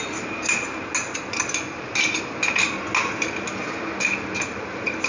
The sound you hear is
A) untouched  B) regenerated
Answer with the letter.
A